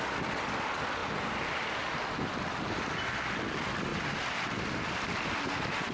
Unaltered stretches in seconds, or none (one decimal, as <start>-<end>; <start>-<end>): 0.0-5.9